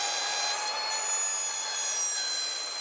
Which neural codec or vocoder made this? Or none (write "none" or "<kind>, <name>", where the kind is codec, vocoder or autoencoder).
none